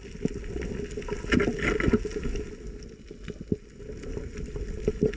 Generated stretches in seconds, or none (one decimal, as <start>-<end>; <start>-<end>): none